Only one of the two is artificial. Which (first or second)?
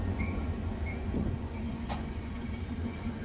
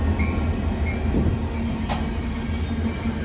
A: first